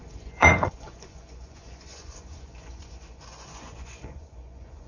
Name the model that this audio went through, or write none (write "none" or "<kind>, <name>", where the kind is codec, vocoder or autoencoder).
vocoder, Vocos